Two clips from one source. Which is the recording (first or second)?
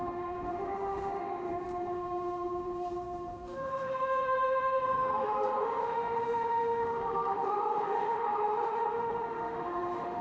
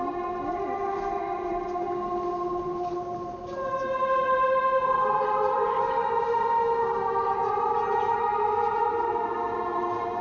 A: second